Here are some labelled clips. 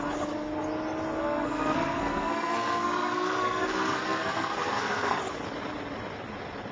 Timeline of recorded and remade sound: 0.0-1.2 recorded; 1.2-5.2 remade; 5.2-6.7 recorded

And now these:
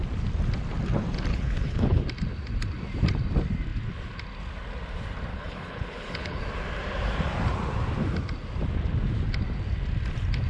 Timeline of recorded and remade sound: 0.0-1.3 recorded; 1.3-2.0 remade; 2.0-5.3 recorded; 5.3-6.4 remade; 6.4-10.5 recorded

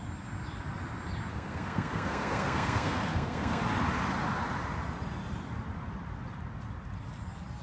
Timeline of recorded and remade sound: 0.0-1.3 recorded; 1.3-3.6 remade; 3.6-7.6 recorded

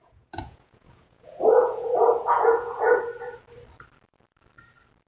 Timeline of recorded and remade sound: 0.0-2.8 remade; 2.8-5.1 recorded

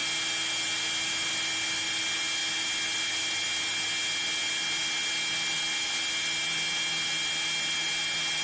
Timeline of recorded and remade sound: 0.0-8.4 recorded

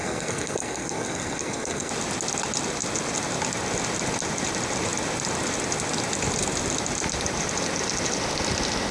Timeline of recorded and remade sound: 0.0-1.9 remade; 1.9-8.9 recorded